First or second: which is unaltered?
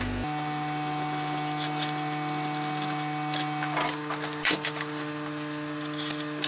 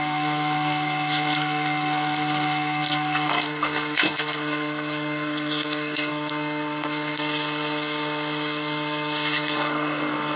first